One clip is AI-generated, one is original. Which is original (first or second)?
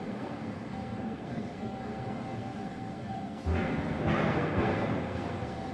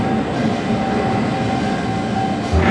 second